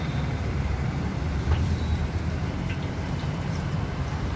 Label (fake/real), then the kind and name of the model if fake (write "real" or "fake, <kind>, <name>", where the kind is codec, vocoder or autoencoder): fake, vocoder, BigVGAN v2